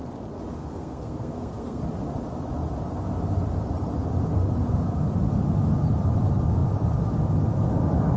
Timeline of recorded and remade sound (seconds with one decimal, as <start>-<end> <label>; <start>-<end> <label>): 0.0-0.6 recorded; 0.6-1.8 remade; 1.8-8.2 recorded